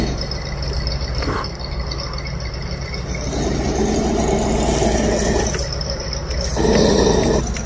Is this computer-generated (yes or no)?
no